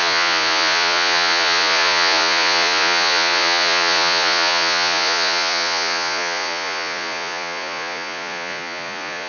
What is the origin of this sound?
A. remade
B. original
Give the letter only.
A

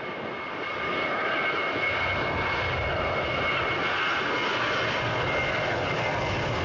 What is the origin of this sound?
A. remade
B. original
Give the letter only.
B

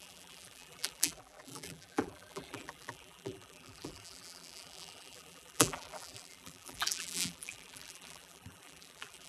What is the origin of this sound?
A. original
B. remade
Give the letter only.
B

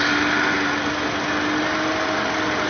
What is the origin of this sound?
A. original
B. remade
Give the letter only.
A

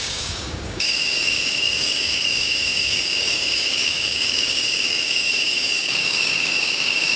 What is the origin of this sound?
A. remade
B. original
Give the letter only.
A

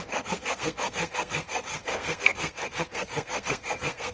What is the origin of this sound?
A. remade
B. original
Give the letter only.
A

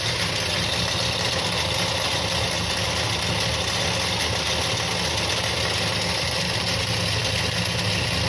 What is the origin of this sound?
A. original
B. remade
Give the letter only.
A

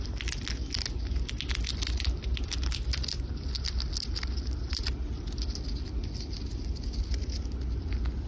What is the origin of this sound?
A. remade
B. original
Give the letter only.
B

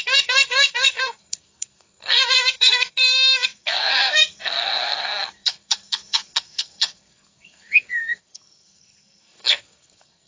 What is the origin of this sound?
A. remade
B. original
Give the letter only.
A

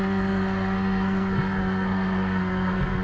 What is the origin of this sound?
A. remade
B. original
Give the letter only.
A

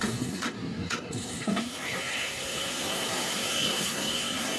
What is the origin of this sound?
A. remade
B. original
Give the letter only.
A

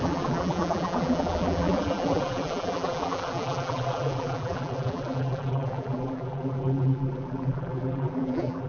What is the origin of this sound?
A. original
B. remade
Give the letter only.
B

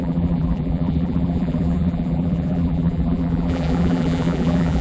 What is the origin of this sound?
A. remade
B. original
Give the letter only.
A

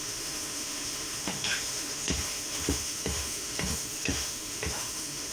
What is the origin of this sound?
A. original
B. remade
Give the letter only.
B